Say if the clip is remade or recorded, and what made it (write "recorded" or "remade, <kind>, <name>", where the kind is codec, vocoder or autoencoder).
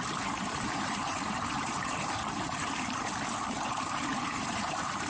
remade, vocoder, BigVGAN v2